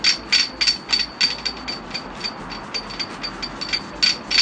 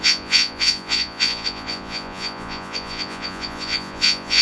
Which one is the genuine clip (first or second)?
first